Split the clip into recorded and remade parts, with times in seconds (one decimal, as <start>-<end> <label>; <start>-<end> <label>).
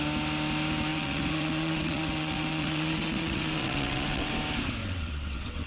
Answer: 0.0-0.9 recorded; 0.9-4.3 remade; 4.3-4.8 recorded; 4.8-5.7 remade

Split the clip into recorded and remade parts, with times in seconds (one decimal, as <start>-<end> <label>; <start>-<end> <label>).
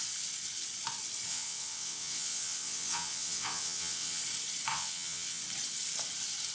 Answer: 0.0-1.3 recorded; 1.3-4.2 remade; 4.2-4.7 recorded; 4.7-5.4 remade; 5.4-6.5 recorded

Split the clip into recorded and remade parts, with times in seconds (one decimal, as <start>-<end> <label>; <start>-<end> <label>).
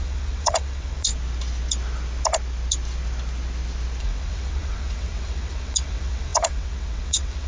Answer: 0.0-1.1 remade; 1.1-4.0 recorded; 4.0-7.5 remade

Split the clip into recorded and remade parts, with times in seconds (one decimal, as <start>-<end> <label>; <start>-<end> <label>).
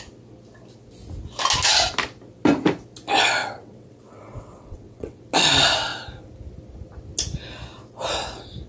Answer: 0.0-3.4 recorded; 3.4-5.2 remade; 5.2-8.7 recorded